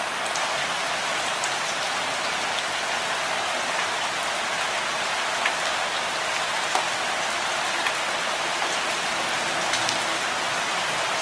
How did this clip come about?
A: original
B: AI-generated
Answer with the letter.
A